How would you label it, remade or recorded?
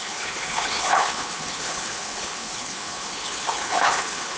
remade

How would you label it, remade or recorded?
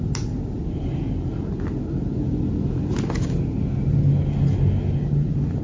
recorded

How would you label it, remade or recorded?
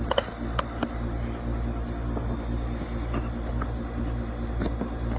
recorded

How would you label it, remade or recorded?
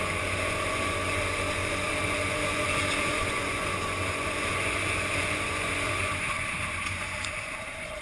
remade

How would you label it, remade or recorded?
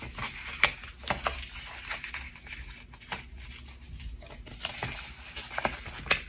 recorded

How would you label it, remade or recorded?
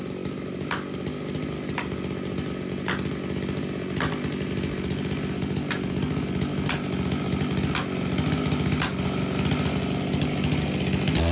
recorded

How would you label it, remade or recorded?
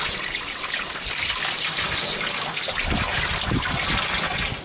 recorded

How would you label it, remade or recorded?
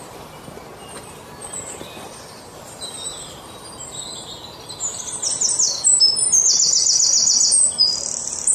recorded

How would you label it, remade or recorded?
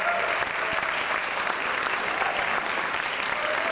recorded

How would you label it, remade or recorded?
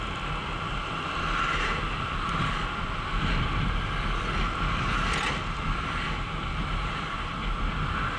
recorded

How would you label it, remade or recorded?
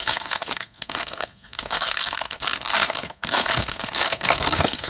remade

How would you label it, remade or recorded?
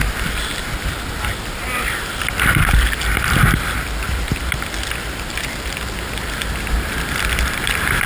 recorded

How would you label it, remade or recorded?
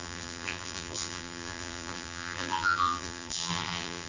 remade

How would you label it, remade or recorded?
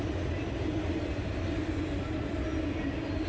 recorded